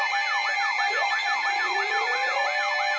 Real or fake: real